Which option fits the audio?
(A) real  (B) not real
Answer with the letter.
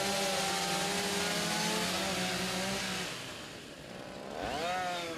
A